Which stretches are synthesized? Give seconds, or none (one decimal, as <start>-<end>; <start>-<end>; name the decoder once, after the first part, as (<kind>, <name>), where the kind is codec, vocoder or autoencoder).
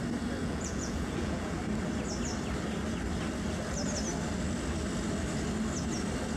0.4-1.6 (vocoder, Vocos)